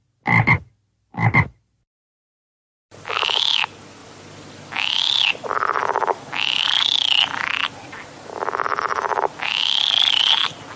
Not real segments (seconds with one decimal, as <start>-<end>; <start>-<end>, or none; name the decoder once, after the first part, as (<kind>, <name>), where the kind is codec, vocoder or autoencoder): none